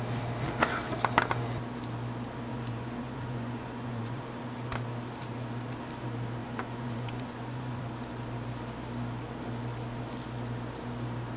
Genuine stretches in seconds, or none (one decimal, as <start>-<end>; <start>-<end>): 0.0-2.5; 4.2-6.4; 7.8-11.4